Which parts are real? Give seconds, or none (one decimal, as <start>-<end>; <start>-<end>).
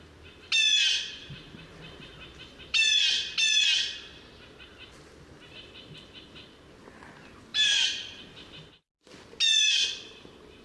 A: 0.0-1.2; 2.8-7.5; 8.2-10.6